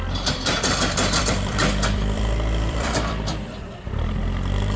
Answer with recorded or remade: remade